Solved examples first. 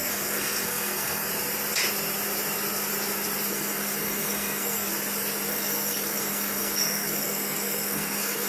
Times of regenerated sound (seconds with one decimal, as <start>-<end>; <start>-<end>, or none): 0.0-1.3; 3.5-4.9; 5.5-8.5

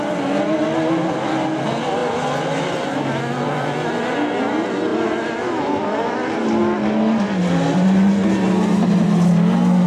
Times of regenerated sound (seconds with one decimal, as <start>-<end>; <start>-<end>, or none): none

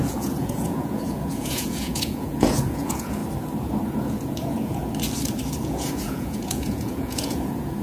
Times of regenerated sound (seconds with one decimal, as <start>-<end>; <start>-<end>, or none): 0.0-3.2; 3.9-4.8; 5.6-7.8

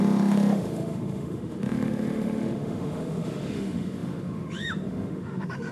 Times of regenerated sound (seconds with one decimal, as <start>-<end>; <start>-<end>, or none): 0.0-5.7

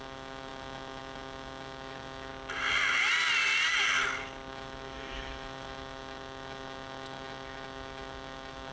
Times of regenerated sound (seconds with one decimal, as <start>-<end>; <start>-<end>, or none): 0.0-2.3; 4.5-8.7